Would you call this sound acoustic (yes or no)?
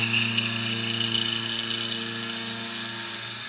yes